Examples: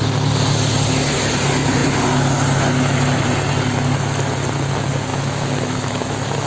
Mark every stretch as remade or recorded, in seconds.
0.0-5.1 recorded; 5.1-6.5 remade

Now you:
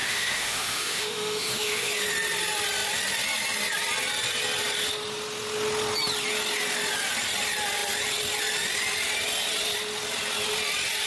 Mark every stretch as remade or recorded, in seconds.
0.0-1.9 remade; 1.9-11.1 recorded

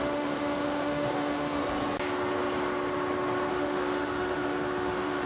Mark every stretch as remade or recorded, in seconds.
0.0-1.6 remade; 1.6-3.5 recorded; 3.5-5.3 remade

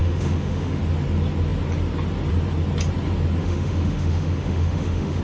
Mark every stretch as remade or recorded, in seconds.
0.0-0.8 remade; 0.8-3.4 recorded; 3.4-5.2 remade

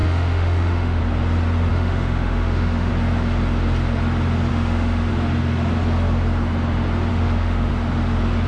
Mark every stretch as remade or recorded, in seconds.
0.0-1.0 remade; 1.0-1.7 recorded; 1.7-2.9 remade; 2.9-4.5 recorded; 4.5-5.1 remade; 5.1-7.1 recorded; 7.1-7.7 remade; 7.7-8.5 recorded

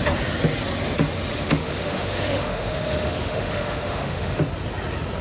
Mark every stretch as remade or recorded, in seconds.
0.0-1.3 recorded; 1.3-4.4 remade; 4.4-5.2 recorded

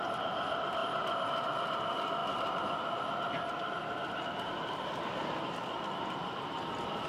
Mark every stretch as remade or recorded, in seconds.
0.0-7.1 recorded